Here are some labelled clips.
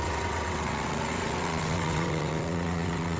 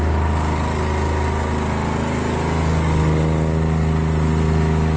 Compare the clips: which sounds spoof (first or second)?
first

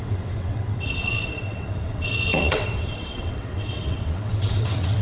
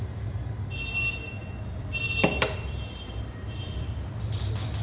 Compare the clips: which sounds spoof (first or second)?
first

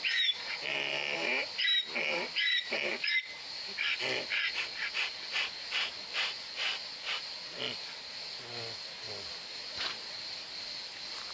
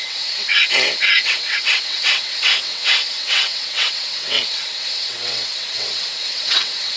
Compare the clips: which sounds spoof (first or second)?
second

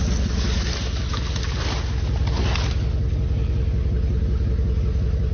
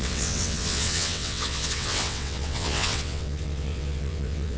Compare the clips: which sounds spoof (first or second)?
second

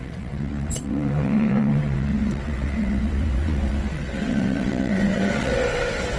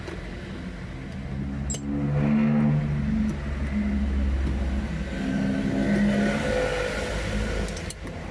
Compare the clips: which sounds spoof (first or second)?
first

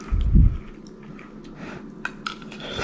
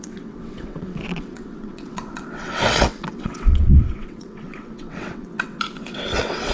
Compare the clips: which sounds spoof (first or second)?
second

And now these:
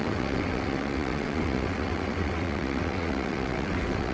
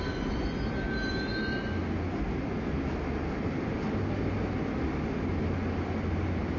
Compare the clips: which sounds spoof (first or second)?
first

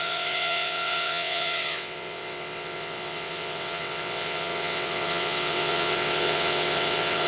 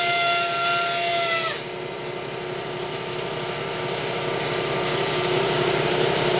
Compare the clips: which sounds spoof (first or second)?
first